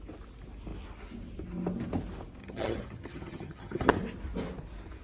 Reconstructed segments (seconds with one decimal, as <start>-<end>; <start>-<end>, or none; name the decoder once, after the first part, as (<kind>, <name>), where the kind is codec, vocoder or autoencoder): 2.4-3.9 (vocoder, HiFi-GAN)